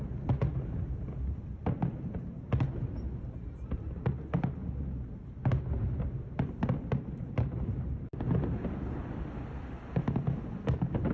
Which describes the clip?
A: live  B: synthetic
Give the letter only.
A